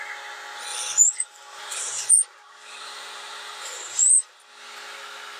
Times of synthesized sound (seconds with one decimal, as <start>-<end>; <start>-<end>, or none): 0.7-2.0; 2.6-4.1